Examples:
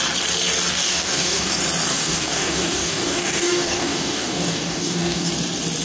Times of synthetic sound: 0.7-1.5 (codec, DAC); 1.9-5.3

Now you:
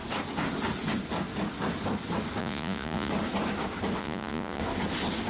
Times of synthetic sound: 2.4-3.1 (vocoder, Vocos); 4.0-4.6

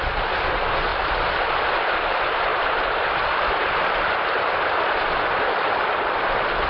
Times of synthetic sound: 0.9-1.5 (vocoder, BigVGAN v2); 2.5-5.0

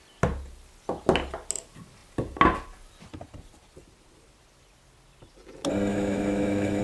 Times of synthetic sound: 5.9-6.8 (autoencoder, DAC-VAE)

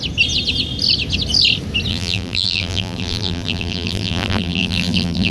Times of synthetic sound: 1.9-5.3 (vocoder, BigVGAN v2)

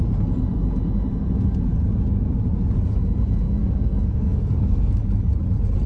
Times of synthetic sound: 3.6-5.0 (codec, SNAC)